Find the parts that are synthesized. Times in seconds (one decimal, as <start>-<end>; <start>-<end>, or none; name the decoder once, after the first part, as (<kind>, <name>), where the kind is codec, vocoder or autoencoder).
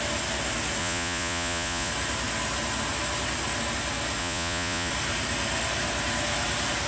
0.8-1.9 (vocoder, Vocos); 4.2-4.9